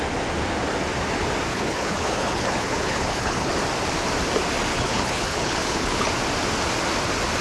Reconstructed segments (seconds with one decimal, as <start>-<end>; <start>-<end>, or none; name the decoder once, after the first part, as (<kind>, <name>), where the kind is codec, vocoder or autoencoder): 1.5-3.5 (codec, HILCodec); 4.7-6.1